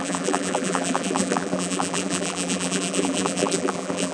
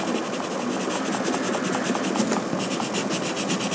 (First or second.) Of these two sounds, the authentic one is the second